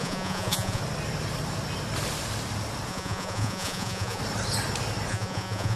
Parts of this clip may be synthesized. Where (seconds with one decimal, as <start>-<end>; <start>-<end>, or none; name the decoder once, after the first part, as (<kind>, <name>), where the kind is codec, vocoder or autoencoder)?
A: 0.0-0.8 (vocoder, Vocos); 2.9-4.2; 5.1-5.8